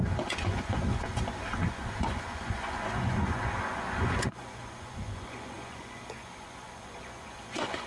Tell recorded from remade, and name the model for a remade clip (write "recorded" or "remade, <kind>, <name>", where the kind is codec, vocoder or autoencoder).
remade, vocoder, Vocos